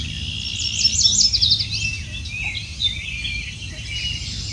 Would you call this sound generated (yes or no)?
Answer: no